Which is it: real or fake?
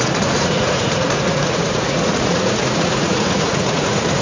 fake